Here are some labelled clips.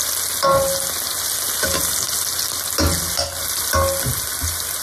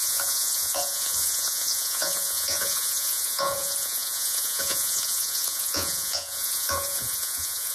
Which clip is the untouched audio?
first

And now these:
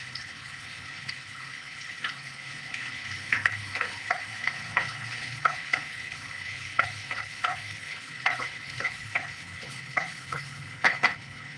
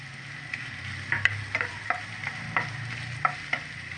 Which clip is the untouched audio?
second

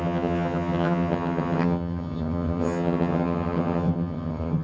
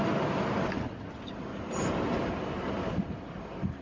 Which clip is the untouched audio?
second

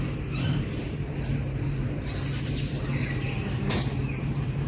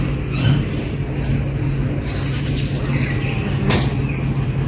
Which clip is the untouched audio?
second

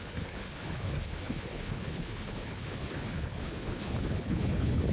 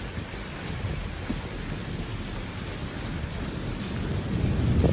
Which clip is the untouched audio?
second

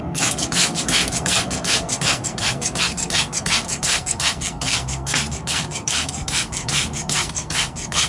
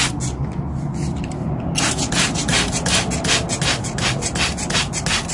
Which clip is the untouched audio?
second